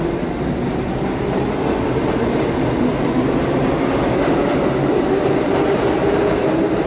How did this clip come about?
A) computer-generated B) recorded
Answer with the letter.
B